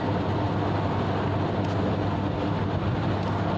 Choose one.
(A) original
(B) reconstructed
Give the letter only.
A